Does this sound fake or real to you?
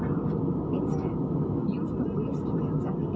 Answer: real